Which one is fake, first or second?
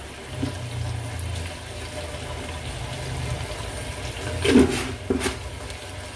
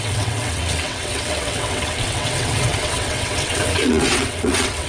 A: second